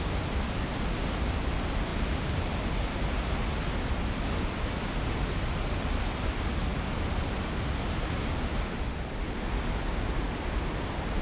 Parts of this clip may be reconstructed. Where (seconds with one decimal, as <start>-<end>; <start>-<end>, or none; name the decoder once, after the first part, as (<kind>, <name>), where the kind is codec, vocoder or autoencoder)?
0.0-1.9 (vocoder, BigVGAN v2); 4.4-6.7; 10.3-11.2